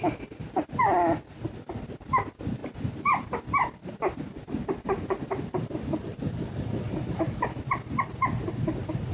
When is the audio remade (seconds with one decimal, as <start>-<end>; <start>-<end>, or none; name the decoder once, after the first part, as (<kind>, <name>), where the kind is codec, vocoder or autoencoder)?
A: none